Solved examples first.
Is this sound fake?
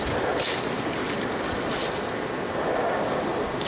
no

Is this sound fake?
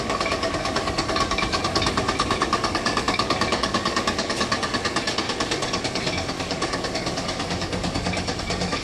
yes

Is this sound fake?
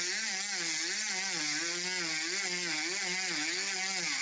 no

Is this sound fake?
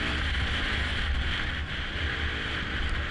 no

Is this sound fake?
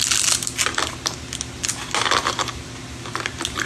no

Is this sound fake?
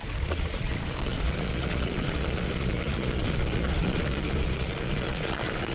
yes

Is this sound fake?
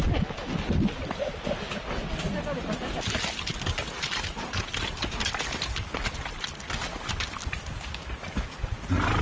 no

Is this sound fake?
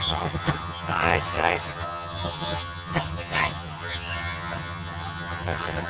yes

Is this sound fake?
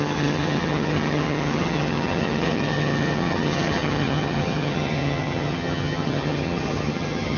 yes